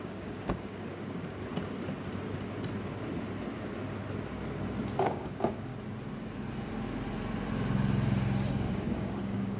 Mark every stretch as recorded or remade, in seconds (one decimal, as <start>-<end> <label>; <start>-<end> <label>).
0.0-1.4 remade; 1.4-5.0 recorded; 5.0-5.7 remade; 5.7-8.5 recorded; 8.5-9.6 remade